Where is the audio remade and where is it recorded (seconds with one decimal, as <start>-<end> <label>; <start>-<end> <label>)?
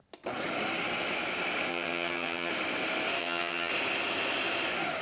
0.0-1.7 recorded; 1.7-2.5 remade; 2.5-3.2 recorded; 3.2-3.7 remade; 3.7-5.0 recorded